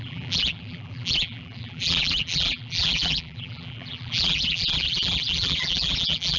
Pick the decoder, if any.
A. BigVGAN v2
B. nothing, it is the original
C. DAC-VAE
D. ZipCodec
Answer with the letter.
A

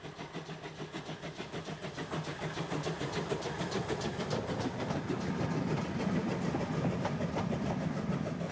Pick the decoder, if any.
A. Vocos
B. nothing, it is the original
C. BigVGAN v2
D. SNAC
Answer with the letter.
B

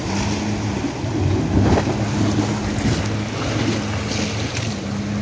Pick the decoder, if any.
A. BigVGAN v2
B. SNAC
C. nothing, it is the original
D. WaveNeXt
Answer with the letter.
C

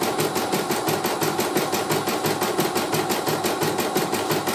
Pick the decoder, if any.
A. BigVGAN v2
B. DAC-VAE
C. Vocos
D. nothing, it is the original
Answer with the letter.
D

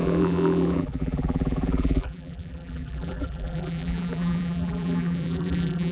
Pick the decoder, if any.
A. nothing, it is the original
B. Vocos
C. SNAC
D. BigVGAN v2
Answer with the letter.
D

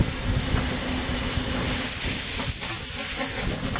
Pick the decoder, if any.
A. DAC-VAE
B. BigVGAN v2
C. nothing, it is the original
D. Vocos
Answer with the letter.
C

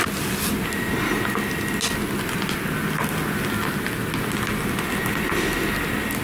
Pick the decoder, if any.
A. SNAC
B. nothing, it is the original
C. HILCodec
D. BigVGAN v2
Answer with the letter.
B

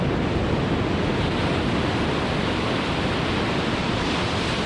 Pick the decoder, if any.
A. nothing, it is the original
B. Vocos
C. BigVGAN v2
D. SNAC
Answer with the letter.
A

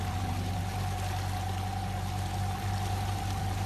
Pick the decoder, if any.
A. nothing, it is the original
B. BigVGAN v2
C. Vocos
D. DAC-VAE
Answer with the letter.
A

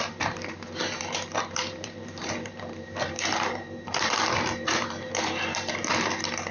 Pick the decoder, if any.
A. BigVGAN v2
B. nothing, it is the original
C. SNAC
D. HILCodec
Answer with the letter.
A